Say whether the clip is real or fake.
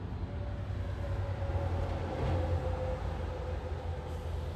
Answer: real